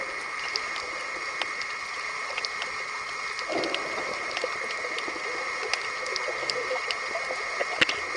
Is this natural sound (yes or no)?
yes